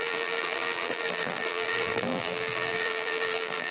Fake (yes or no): yes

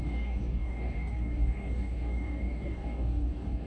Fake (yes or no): yes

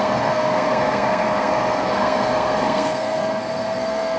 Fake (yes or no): yes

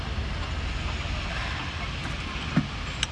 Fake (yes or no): no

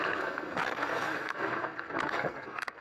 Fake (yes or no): yes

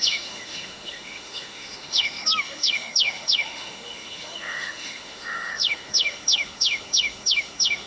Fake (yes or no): yes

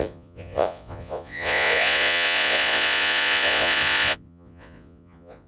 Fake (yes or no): yes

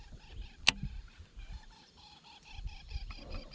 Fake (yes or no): no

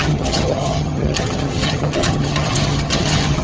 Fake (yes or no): yes